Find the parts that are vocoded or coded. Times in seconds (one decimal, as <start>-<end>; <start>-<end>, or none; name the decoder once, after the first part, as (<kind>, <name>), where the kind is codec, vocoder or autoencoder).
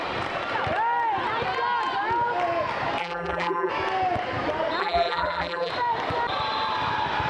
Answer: 3.0-3.7 (vocoder, BigVGAN v2); 4.8-5.7